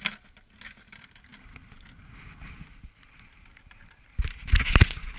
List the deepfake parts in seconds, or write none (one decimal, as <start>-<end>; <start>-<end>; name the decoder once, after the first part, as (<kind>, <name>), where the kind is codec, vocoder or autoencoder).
none